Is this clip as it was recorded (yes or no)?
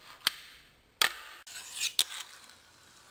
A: yes